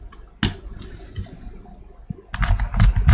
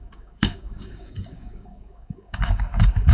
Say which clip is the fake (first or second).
second